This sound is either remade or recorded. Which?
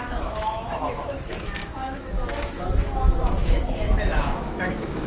remade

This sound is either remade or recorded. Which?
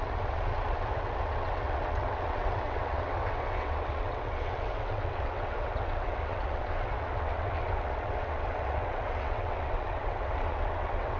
remade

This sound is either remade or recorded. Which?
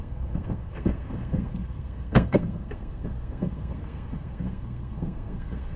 remade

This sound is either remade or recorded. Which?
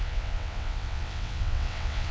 remade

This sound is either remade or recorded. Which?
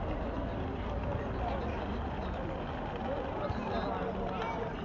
recorded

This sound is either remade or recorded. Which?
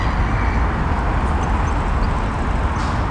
recorded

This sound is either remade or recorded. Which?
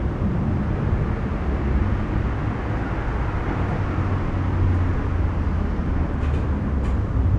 recorded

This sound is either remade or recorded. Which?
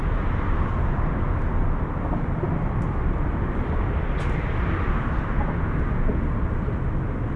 recorded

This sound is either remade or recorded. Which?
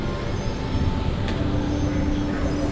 recorded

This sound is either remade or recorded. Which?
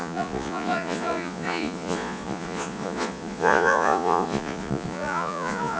remade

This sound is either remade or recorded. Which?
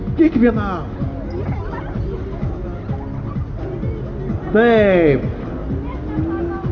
recorded